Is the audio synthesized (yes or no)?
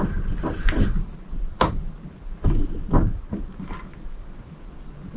no